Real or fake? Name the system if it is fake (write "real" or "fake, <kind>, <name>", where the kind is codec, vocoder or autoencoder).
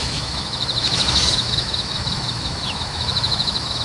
fake, autoencoder, DAC-VAE